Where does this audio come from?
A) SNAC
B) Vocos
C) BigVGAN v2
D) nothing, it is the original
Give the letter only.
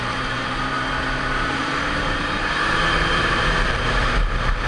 C